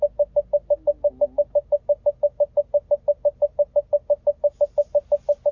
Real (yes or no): yes